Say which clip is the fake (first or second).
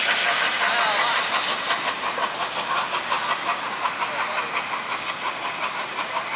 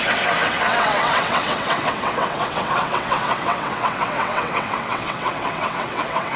second